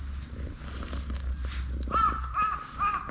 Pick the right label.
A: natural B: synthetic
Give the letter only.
A